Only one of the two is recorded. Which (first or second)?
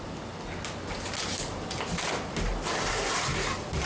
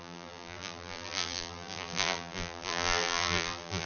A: first